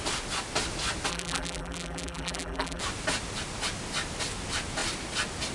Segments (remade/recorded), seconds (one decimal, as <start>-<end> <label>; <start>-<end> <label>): 0.0-1.1 recorded; 1.1-2.8 remade; 2.8-5.5 recorded